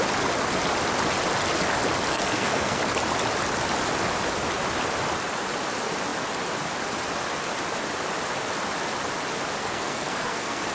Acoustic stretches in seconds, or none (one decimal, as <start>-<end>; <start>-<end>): 0.0-2.1; 2.8-9.6

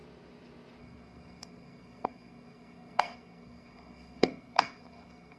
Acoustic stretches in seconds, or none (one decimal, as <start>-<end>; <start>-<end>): 0.0-0.8

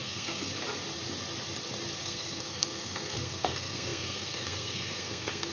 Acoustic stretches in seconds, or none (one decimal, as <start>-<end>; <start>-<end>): 0.5-2.0

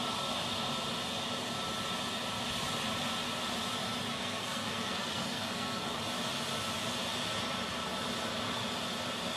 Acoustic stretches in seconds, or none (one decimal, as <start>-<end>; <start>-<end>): 0.0-4.1; 6.0-9.4

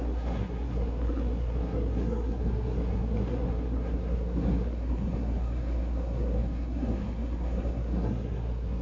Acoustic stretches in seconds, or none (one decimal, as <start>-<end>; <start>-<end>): none